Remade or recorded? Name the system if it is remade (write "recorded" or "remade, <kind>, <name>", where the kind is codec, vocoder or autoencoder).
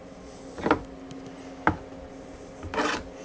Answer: recorded